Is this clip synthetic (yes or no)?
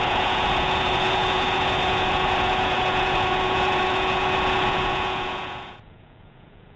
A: yes